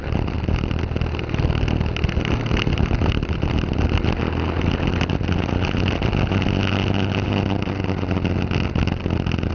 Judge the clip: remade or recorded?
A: recorded